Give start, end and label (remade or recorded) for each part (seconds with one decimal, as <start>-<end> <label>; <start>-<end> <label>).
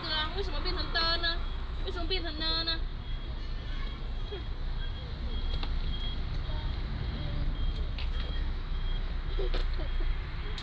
0.0-1.2 recorded; 1.2-2.4 remade; 2.4-8.0 recorded; 8.0-9.1 remade; 9.1-10.6 recorded